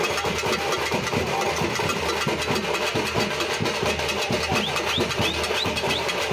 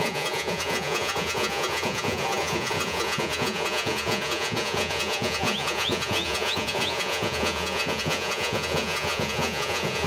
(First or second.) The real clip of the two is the first